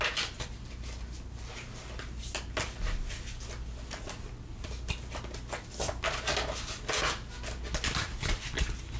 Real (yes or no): yes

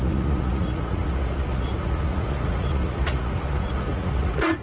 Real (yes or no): no